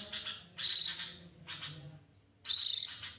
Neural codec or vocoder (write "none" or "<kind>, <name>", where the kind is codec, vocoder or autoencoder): none